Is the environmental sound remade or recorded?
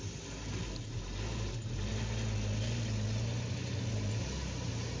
recorded